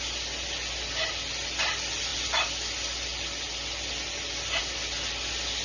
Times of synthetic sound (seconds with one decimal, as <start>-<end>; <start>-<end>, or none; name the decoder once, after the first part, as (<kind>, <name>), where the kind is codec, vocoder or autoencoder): none